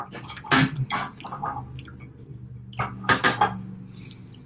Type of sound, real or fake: real